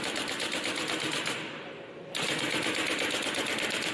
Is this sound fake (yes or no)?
no